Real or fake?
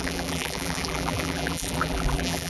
fake